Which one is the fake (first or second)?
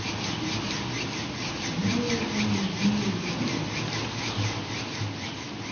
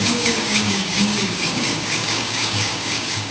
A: second